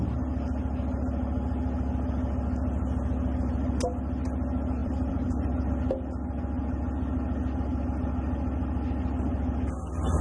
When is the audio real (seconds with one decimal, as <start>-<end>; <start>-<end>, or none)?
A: 0.0-4.8; 5.7-10.2